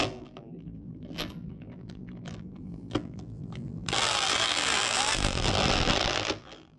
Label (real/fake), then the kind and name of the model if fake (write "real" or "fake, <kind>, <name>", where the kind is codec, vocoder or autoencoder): fake, vocoder, BigVGAN v2